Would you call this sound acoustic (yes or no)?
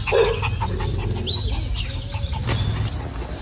yes